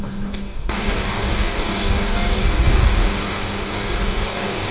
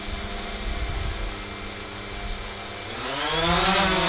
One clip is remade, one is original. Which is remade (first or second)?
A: first